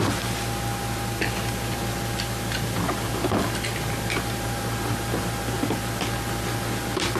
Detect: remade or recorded recorded